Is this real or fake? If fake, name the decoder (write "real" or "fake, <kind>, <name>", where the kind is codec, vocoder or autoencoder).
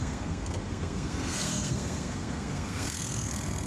fake, codec, SNAC